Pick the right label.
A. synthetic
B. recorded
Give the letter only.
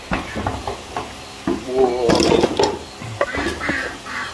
B